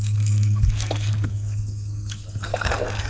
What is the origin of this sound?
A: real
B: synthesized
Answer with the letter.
B